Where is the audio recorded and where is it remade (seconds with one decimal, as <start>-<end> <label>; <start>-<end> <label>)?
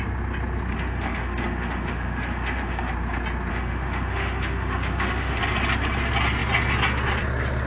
0.0-0.7 recorded; 0.7-2.9 remade; 2.9-3.5 recorded; 3.5-5.4 remade; 5.4-7.7 recorded